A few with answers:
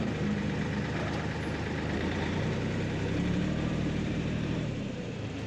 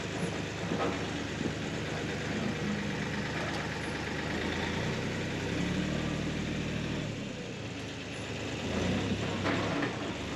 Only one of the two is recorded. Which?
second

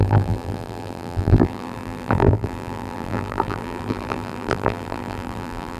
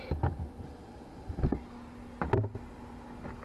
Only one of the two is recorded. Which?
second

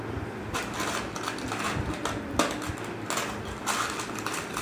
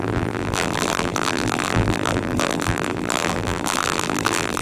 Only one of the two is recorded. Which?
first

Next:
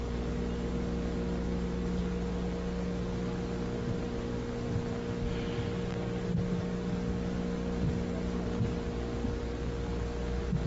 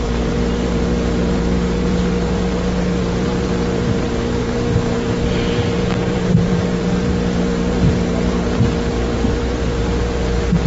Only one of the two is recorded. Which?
first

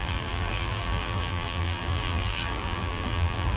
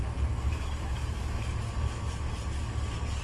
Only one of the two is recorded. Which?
second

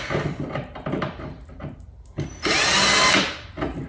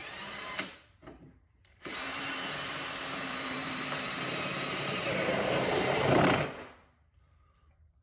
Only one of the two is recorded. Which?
first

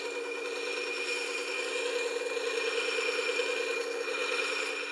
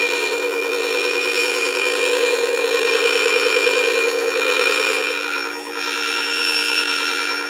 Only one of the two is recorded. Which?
first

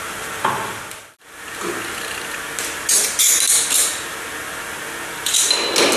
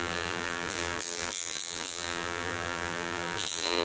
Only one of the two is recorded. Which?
first